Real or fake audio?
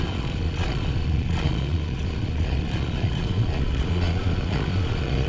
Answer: fake